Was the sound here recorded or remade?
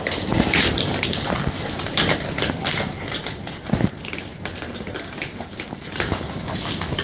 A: remade